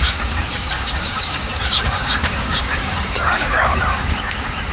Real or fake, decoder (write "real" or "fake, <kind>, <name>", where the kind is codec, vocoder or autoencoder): fake, codec, DAC